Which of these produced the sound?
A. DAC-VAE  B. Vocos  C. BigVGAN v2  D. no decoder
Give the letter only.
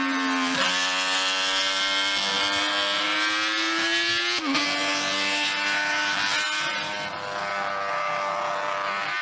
D